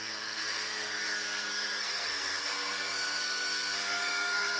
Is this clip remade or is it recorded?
remade